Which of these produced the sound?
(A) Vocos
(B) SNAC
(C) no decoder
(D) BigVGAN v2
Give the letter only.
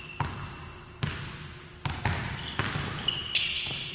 C